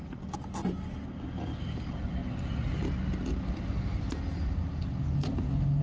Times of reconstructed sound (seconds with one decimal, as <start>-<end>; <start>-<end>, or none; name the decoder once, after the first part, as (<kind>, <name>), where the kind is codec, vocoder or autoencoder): none